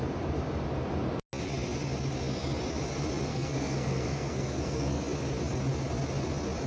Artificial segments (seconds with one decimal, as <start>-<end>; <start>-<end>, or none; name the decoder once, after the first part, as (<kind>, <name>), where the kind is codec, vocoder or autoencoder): 3.3-5.0 (codec, SNAC)